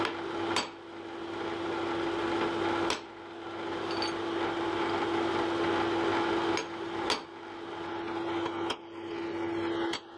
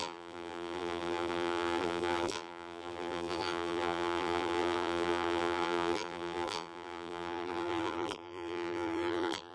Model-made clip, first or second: second